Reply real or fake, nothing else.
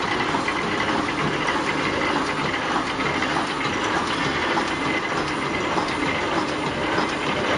real